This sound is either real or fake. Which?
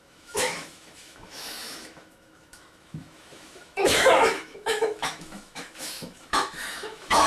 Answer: fake